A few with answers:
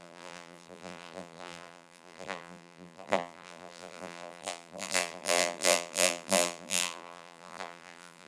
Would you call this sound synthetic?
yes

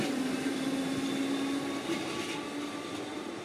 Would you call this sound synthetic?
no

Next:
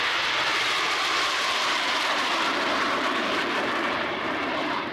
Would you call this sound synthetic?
yes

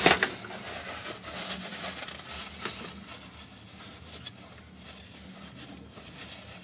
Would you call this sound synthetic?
no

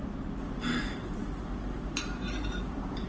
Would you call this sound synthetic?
yes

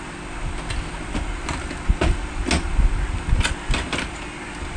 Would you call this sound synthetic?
no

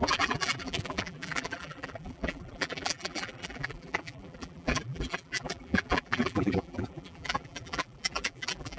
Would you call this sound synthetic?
yes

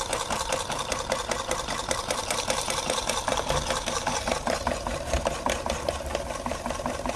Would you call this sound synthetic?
yes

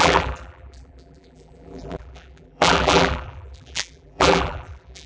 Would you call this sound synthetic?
yes